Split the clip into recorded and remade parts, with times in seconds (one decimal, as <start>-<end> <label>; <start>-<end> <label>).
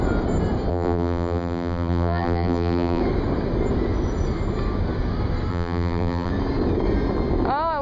0.0-0.7 recorded; 0.7-3.0 remade; 3.0-5.5 recorded; 5.5-6.3 remade; 6.3-7.8 recorded